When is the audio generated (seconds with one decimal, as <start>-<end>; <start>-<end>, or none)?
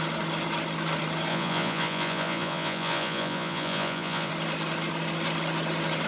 1.3-4.3